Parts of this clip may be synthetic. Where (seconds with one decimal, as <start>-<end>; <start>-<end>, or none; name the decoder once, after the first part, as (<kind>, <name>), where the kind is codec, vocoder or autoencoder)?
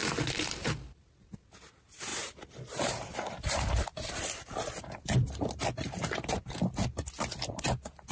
0.0-1.0 (vocoder, BigVGAN v2); 2.1-6.3